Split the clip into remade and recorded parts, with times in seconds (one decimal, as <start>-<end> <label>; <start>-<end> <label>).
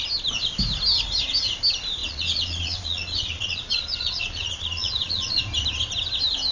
0.0-2.0 recorded; 2.0-5.4 remade; 5.4-6.5 recorded